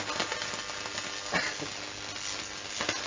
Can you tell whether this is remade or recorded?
recorded